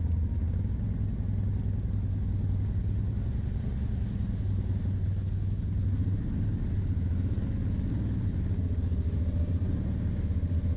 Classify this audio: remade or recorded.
recorded